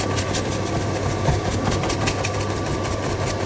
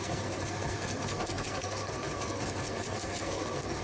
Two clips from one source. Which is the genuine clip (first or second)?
first